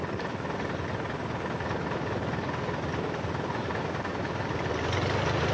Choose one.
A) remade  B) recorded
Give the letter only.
B